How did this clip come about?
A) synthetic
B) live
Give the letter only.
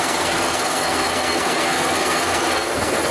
A